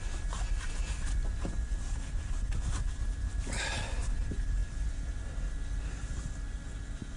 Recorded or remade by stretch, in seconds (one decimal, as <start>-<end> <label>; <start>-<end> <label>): 0.0-7.2 recorded